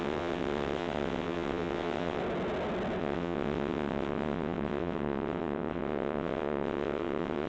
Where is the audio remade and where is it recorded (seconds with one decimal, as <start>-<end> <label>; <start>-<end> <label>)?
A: 0.0-2.2 remade; 2.2-3.0 recorded; 3.0-7.5 remade